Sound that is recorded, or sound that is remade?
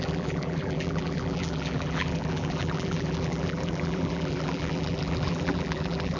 remade